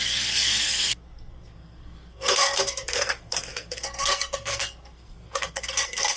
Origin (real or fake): fake